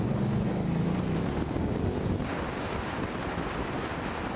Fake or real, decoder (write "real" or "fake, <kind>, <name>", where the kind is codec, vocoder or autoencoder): real